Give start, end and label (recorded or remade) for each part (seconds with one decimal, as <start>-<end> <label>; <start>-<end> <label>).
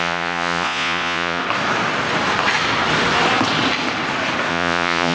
0.0-1.4 remade; 1.4-4.5 recorded; 4.5-5.1 remade